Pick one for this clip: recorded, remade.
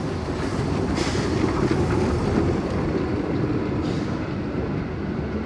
recorded